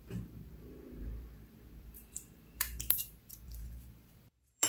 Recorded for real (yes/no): no